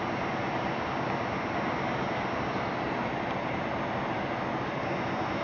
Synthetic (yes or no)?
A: no